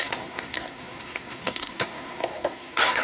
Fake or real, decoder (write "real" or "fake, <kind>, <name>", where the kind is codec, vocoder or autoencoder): fake, codec, SNAC